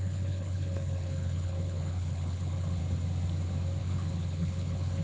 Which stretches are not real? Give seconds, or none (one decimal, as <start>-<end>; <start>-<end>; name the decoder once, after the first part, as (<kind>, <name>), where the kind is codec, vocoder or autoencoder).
0.0-2.8 (codec, HILCodec); 3.8-5.0